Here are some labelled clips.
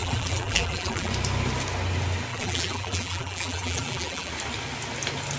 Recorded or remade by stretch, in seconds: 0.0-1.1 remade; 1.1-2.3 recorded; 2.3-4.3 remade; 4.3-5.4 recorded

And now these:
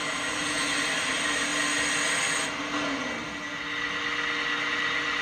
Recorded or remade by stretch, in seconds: 0.0-1.5 remade; 1.5-4.6 recorded; 4.6-5.2 remade

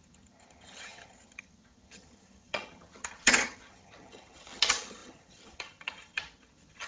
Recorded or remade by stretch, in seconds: 0.0-6.9 remade

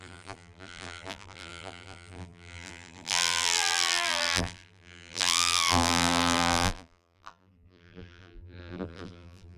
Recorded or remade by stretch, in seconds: 0.0-9.6 remade

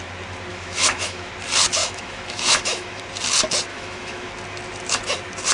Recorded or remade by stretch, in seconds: 0.0-0.5 recorded; 0.5-1.3 remade; 1.3-1.8 recorded; 1.8-3.0 remade; 3.0-3.7 recorded; 3.7-4.3 remade; 4.3-5.5 recorded

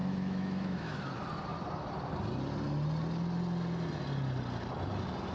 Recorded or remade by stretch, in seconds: 0.0-1.1 remade; 1.1-5.3 recorded